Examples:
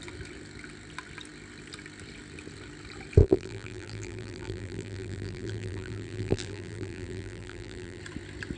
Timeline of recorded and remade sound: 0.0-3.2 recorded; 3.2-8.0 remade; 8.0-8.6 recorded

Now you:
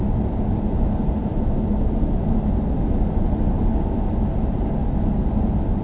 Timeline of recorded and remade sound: 0.0-5.8 recorded